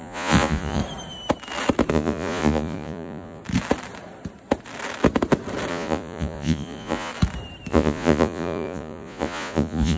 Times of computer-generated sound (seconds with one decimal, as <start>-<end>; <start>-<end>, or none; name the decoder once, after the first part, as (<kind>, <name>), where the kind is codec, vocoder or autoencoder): 0.0-0.8 (vocoder, Vocos); 1.9-3.4; 5.7-7.1; 7.7-10.0